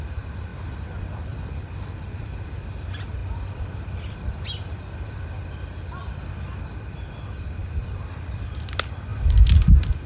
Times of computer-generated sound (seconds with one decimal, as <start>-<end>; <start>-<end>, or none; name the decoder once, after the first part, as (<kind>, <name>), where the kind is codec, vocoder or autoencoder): 0.5-2.7 (vocoder, BigVGAN v2); 7.6-8.6